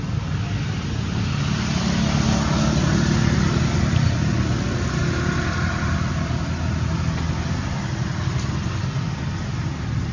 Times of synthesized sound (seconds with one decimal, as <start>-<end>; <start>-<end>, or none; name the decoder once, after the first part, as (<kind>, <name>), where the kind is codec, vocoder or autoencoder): none